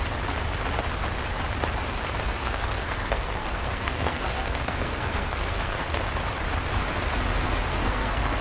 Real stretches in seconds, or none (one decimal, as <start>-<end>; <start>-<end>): 0.0-2.4; 6.0-7.7